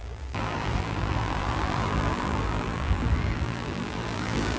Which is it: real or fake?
fake